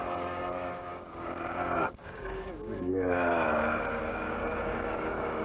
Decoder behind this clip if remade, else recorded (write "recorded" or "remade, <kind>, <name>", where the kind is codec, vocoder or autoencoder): remade, codec, DAC